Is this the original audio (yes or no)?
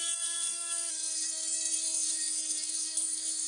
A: no